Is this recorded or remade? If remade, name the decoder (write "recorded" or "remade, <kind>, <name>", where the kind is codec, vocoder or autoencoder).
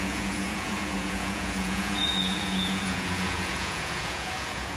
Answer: remade, vocoder, Vocos